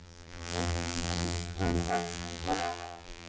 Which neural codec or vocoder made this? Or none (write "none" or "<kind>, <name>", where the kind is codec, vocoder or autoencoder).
vocoder, BigVGAN v2